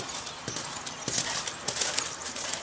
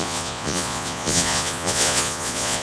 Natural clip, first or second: first